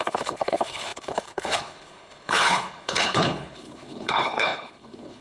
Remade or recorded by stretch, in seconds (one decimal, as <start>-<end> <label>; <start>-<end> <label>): 0.0-5.2 remade